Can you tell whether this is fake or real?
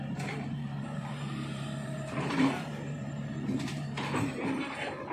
fake